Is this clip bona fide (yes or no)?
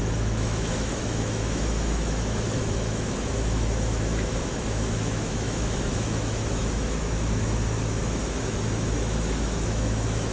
no